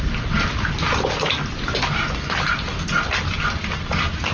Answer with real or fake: real